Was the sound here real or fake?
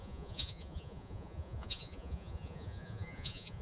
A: fake